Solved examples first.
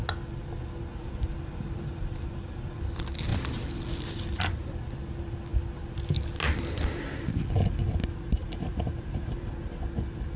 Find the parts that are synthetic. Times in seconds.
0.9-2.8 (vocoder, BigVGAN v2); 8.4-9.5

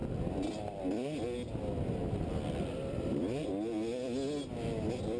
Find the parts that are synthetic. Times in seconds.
0.0-0.8 (vocoder, BigVGAN v2)

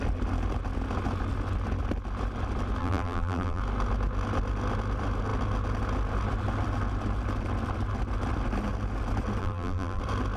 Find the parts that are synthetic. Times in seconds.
2.8-3.6 (vocoder, BigVGAN v2); 9.4-10.0

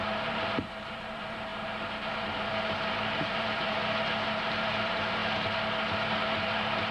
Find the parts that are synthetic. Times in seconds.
0.0-3.8 (vocoder, BigVGAN v2); 4.3-5.2; 6.5-6.9

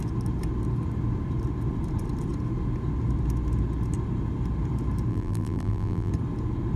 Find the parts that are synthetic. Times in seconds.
5.1-6.1 (vocoder, BigVGAN v2)